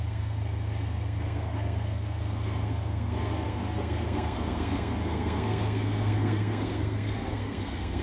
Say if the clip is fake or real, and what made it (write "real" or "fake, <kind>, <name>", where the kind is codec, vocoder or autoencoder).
fake, codec, SNAC